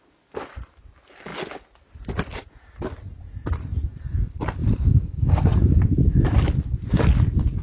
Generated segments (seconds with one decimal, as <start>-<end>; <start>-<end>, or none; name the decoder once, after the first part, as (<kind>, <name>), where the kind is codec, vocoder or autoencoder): 4.6-5.8 (codec, DAC)